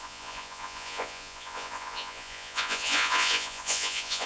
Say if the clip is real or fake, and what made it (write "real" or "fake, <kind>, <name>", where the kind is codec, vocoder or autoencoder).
fake, vocoder, Vocos